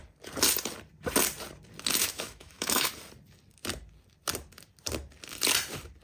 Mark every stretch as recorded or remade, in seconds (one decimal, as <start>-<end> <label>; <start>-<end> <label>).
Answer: 0.0-2.0 recorded; 2.0-2.9 remade; 2.9-6.0 recorded